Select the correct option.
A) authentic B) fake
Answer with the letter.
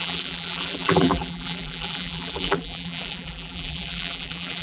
B